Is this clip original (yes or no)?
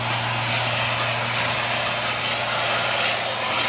yes